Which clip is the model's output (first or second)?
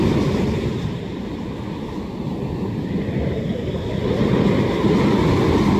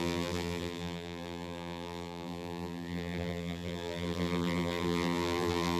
second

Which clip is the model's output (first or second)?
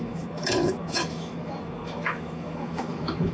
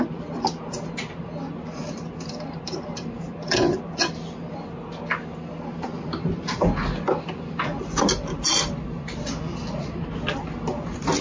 first